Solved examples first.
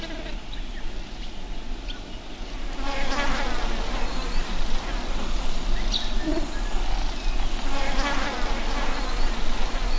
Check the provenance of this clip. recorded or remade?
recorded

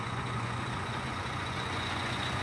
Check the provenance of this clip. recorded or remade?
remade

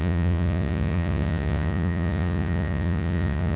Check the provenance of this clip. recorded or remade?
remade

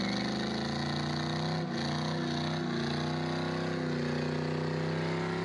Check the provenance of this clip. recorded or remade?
recorded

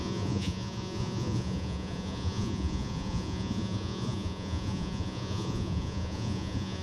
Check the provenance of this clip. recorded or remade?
remade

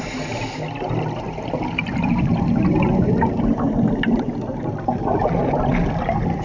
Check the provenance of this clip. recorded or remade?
recorded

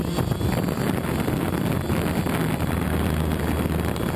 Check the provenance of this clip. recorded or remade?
recorded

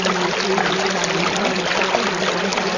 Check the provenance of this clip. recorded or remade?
recorded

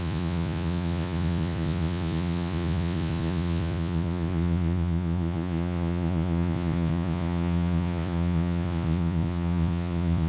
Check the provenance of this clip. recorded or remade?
remade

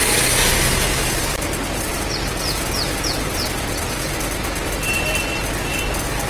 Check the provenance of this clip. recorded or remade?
recorded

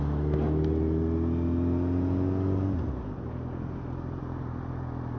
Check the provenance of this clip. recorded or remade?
recorded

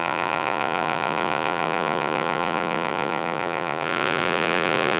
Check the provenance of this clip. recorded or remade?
remade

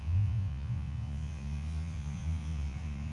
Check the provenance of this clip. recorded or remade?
remade